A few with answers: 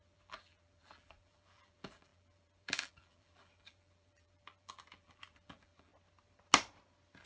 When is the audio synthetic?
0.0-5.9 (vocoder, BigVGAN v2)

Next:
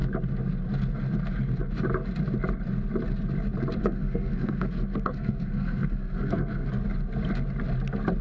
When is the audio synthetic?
3.8-6.7 (codec, SNAC)

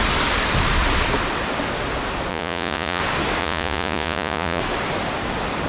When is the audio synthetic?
2.3-3.0 (vocoder, Vocos); 3.4-4.6

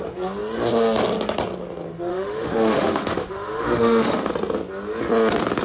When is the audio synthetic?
2.1-4.3 (autoencoder, DAC-VAE)

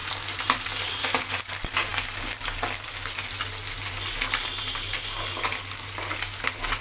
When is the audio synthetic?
none

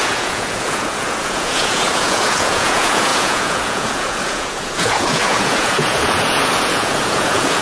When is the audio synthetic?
0.0-7.6 (vocoder, Vocos)

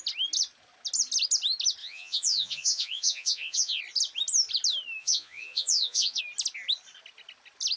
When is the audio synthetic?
1.8-3.8 (vocoder, Vocos); 5.0-6.2